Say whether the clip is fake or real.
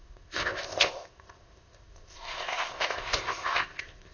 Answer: fake